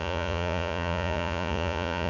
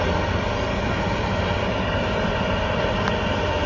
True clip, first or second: second